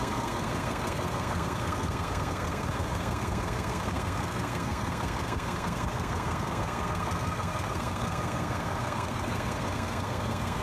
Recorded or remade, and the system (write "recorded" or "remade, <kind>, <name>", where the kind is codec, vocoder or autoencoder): remade, codec, SNAC